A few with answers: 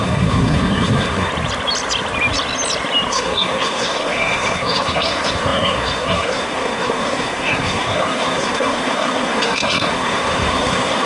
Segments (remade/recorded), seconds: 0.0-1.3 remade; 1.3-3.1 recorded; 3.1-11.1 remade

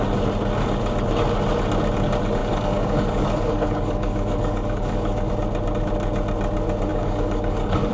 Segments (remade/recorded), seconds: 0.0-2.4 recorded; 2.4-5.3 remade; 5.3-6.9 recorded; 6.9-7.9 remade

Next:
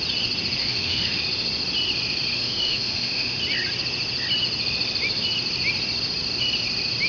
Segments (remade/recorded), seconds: 0.0-0.6 recorded; 0.6-1.2 remade; 1.2-2.3 recorded; 2.3-3.4 remade; 3.4-7.1 recorded

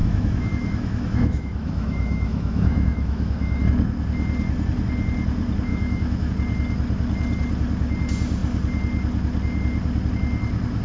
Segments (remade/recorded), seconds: 0.0-3.6 remade; 3.6-5.7 recorded; 5.7-6.3 remade; 6.3-10.8 recorded